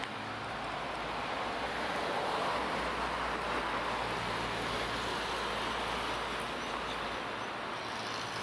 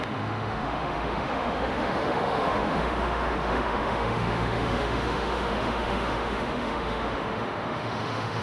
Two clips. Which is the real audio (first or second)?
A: first